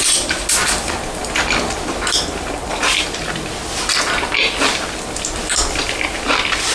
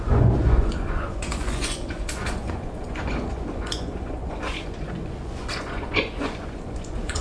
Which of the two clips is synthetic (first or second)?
second